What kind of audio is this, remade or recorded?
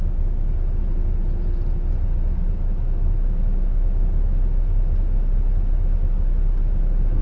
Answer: recorded